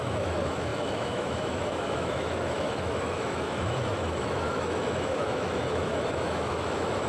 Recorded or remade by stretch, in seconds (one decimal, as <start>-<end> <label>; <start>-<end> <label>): 0.0-7.1 remade